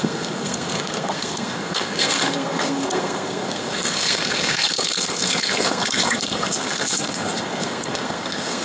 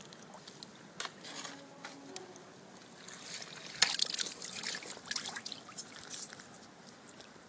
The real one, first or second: second